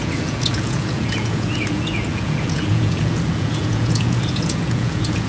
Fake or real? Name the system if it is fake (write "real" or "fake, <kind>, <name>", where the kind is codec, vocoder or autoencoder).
fake, vocoder, Vocos